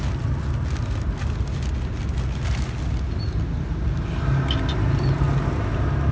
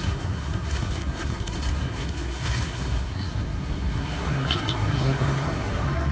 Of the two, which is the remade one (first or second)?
second